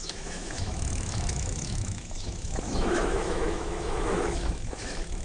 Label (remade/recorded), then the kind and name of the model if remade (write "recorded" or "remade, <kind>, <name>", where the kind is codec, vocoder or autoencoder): remade, autoencoder, DAC-VAE